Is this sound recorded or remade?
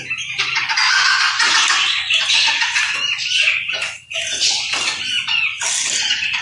recorded